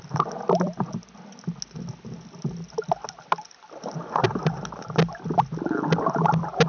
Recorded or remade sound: recorded